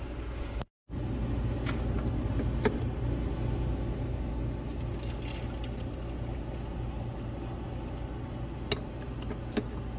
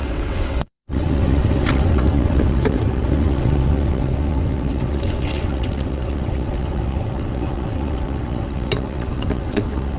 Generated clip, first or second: second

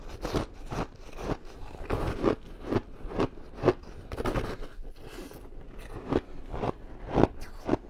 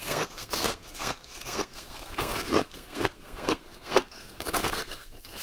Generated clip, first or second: second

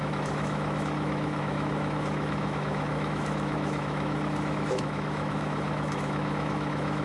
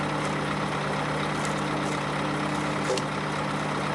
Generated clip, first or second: first